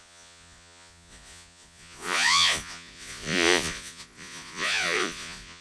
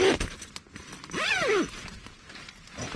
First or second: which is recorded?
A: second